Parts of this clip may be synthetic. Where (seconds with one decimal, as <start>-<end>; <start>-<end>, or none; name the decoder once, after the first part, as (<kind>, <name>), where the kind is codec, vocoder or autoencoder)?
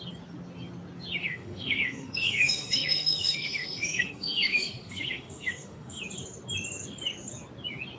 1.2-6.0 (autoencoder, DAC-VAE)